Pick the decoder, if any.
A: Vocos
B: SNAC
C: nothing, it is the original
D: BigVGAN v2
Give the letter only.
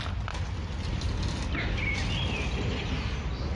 C